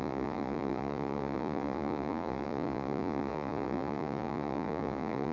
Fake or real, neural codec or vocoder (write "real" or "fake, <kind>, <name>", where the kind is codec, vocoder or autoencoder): fake, vocoder, Vocos